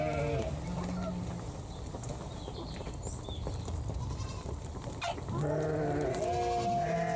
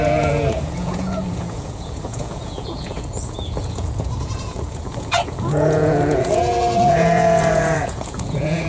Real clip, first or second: first